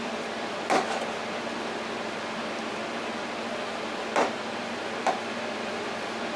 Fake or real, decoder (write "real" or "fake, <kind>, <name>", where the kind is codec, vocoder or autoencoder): fake, vocoder, BigVGAN v2